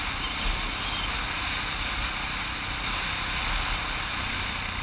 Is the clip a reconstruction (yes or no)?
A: no